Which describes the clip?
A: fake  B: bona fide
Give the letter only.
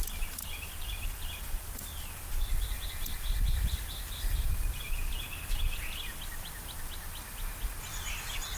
B